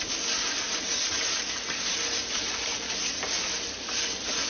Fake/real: real